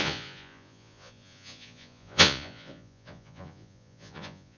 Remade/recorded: remade